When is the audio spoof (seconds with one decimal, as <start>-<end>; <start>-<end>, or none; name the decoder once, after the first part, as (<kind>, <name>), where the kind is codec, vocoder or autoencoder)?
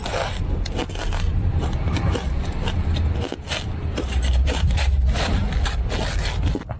1.3-2.1 (vocoder, BigVGAN v2); 3.8-5.0